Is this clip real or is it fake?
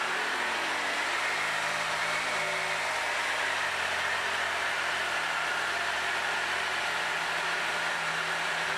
real